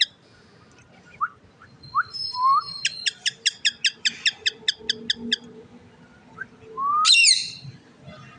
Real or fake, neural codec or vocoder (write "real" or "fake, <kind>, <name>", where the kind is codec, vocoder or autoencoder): real